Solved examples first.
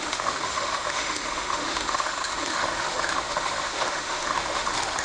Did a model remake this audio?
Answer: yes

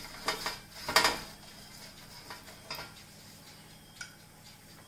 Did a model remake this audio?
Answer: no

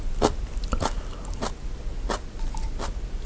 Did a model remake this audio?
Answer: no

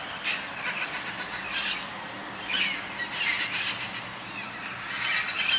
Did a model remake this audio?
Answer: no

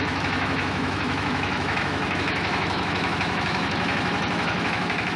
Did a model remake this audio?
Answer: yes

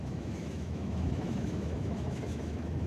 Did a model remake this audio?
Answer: yes